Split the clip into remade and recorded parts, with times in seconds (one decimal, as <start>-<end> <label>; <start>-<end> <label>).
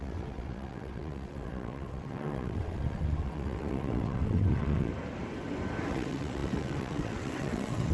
0.0-4.9 remade; 4.9-5.9 recorded; 5.9-7.9 remade